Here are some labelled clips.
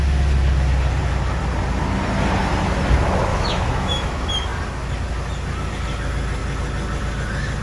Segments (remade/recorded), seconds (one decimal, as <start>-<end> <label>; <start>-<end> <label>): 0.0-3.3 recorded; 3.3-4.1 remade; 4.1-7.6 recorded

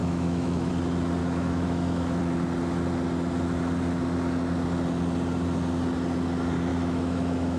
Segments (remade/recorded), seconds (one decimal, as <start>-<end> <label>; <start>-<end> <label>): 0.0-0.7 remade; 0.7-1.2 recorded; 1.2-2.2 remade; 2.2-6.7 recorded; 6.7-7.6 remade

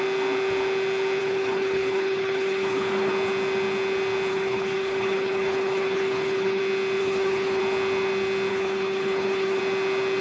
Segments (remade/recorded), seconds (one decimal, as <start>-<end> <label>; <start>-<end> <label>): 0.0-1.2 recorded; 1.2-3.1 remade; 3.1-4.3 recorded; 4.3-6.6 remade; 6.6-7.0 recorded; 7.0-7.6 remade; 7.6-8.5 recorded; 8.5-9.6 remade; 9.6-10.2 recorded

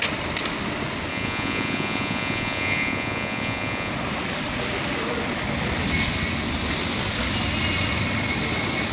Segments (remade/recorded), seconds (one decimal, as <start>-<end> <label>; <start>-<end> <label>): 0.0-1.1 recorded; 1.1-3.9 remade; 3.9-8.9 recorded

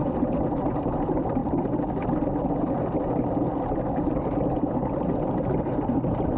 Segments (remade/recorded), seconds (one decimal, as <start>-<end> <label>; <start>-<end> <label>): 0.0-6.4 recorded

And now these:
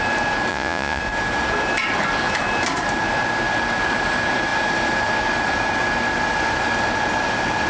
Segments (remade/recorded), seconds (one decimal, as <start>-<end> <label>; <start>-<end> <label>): 0.0-0.5 recorded; 0.5-1.0 remade; 1.0-7.7 recorded

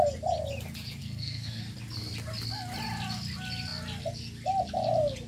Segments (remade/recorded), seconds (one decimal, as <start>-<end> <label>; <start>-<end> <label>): 0.0-1.0 recorded; 1.0-1.6 remade; 1.6-5.3 recorded